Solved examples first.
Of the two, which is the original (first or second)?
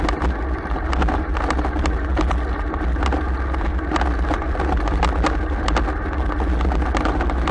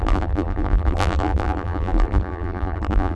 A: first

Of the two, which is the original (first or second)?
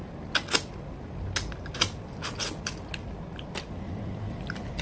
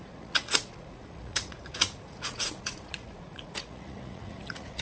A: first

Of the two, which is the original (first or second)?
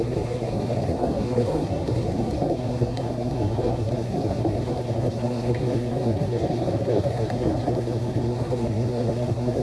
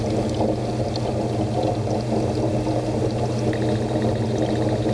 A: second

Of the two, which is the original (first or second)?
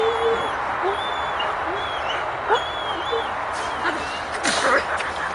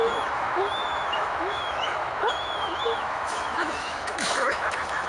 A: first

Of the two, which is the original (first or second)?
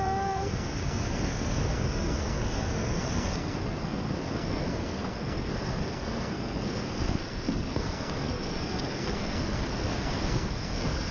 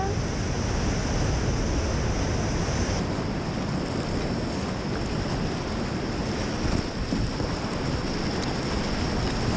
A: second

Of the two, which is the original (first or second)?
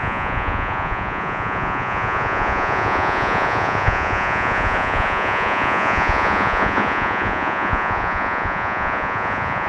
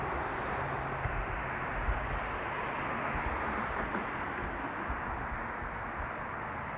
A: second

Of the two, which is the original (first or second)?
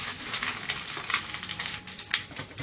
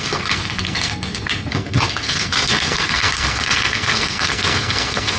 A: first